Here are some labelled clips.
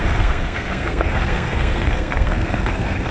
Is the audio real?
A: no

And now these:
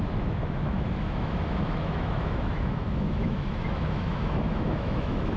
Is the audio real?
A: no